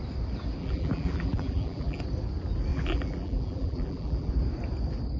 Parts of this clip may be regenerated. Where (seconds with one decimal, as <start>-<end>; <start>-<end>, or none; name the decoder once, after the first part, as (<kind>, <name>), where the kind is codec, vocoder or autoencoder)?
0.6-2.0 (vocoder, BigVGAN v2); 2.7-4.3